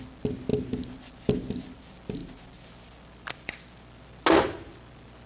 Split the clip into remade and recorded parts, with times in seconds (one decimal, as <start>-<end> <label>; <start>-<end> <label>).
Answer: 0.0-0.5 recorded; 0.5-1.8 remade; 1.8-2.2 recorded; 2.2-4.1 remade; 4.1-5.3 recorded